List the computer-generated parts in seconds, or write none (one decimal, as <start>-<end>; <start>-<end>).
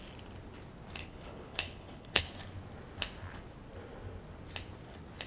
1.0-2.2